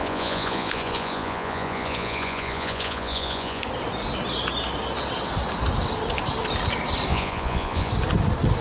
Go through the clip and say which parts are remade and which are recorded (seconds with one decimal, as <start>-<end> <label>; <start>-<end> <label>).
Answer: 0.0-3.6 remade; 3.6-7.1 recorded; 7.1-7.9 remade; 7.9-8.6 recorded